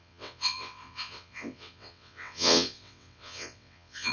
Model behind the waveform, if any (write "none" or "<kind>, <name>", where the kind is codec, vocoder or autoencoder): vocoder, WaveNeXt